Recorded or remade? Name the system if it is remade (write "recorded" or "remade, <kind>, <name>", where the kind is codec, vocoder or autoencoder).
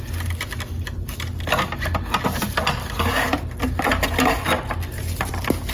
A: recorded